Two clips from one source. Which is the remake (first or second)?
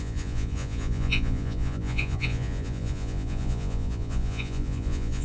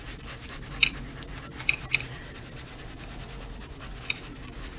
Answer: first